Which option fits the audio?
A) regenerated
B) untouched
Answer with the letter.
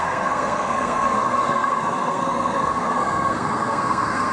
A